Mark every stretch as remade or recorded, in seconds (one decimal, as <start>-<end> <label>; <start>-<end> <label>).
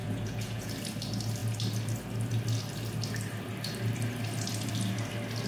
0.0-0.7 remade; 0.7-5.5 recorded